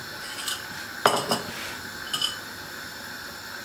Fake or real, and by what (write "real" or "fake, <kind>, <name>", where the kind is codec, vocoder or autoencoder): real